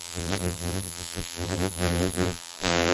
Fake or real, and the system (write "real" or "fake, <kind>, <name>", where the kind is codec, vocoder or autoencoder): fake, vocoder, BigVGAN v2